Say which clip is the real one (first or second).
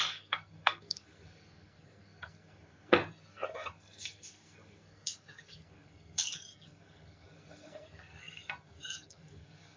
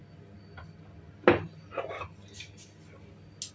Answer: second